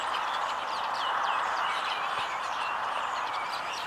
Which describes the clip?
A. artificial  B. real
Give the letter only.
A